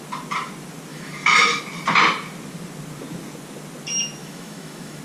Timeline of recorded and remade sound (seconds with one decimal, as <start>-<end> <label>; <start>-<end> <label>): 0.0-0.9 recorded; 0.9-1.6 remade; 1.6-4.2 recorded; 4.2-5.0 remade